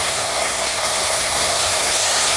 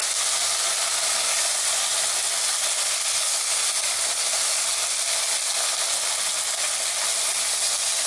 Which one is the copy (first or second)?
first